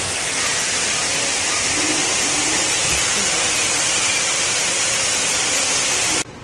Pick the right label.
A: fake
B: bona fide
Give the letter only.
B